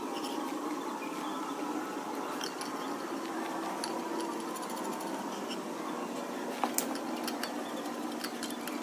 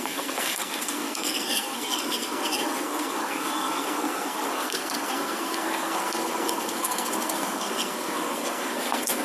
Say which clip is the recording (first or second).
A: first